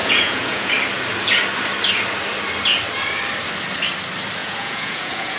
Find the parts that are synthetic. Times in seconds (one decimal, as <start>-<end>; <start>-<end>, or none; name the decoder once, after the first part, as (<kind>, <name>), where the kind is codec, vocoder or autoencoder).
0.0-0.7 (vocoder, Vocos); 4.4-5.4